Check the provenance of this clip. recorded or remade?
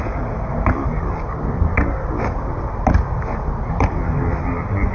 recorded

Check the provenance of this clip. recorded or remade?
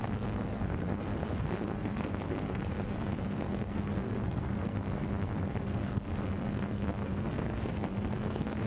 remade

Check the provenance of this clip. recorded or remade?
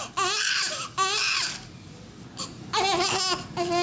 recorded